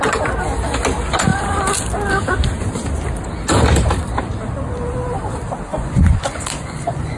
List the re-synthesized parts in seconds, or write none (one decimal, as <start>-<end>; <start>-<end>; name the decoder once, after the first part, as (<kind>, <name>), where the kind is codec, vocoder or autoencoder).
5.7-7.2 (vocoder, Vocos)